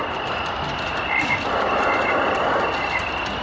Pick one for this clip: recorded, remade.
recorded